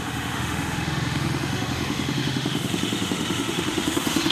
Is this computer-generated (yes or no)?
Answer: yes